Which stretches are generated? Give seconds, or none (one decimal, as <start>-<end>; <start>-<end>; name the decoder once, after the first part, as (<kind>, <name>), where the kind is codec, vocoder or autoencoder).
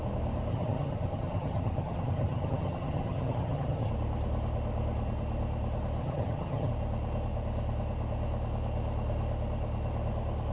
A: 0.5-3.9 (vocoder, HiFi-GAN); 6.0-6.7